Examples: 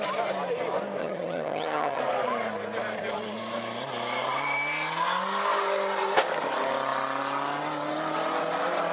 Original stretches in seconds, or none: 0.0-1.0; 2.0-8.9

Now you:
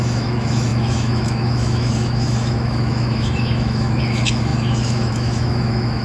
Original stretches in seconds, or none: none

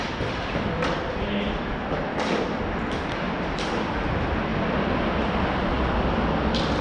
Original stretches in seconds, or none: 0.0-6.8

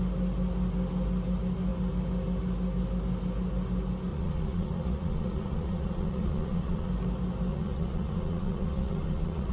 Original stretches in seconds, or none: 0.0-4.1; 6.9-7.5

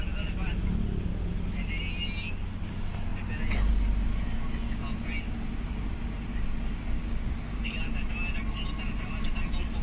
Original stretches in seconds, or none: 0.0-7.0; 7.7-9.8

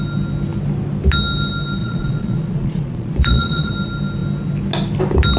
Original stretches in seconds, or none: 0.0-1.8; 3.7-5.4

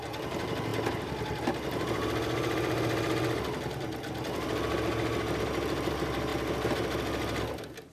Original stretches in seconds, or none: 0.0-7.9

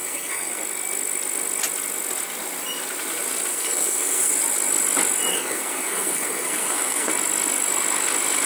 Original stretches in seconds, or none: 0.6-3.5; 4.3-5.3; 7.1-8.5